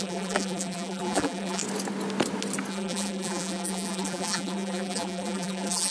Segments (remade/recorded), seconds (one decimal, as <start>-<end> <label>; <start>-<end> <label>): 0.0-1.6 remade; 1.6-2.7 recorded; 2.7-5.9 remade